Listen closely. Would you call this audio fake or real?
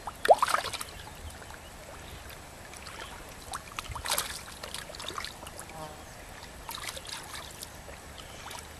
real